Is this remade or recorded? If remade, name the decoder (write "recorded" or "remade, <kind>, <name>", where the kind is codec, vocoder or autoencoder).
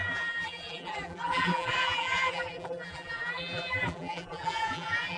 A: remade, vocoder, BigVGAN v2